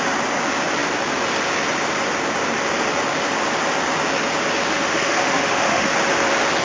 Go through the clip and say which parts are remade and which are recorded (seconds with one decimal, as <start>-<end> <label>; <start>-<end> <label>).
0.0-4.7 recorded; 4.7-5.9 remade; 5.9-6.6 recorded